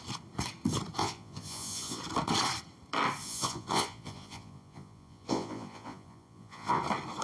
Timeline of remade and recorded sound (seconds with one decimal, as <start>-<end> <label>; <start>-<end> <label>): 0.0-1.0 recorded; 1.0-2.0 remade; 2.0-3.2 recorded; 3.2-6.8 remade; 6.8-7.2 recorded